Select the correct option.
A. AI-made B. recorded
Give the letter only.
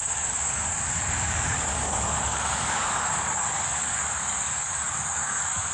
A